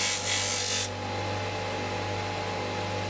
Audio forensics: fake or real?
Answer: real